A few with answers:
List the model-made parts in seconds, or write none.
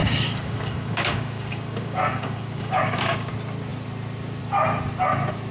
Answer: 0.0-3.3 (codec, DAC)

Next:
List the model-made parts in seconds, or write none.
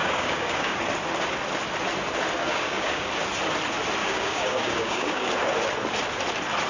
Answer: 0.0-0.8 (codec, DAC); 2.5-3.1; 4.0-5.3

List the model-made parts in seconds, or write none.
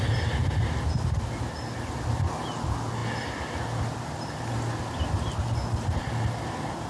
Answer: none